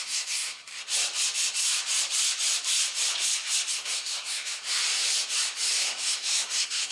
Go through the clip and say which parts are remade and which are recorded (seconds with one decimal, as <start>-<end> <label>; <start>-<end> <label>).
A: 0.0-0.7 remade; 0.7-3.7 recorded; 3.7-4.8 remade; 4.8-5.8 recorded; 5.8-6.9 remade